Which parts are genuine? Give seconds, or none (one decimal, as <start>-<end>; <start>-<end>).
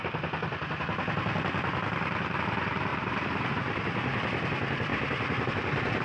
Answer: 0.0-2.4; 4.9-5.5